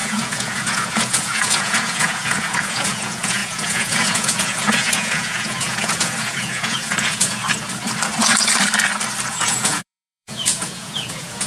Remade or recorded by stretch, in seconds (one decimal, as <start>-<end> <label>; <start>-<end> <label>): 0.0-7.4 remade; 7.4-9.3 recorded; 9.3-11.5 remade